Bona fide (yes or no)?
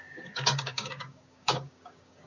no